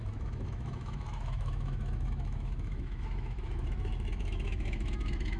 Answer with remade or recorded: remade